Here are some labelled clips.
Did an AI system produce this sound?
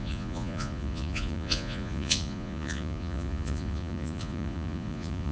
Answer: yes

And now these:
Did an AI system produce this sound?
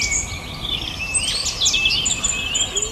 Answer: no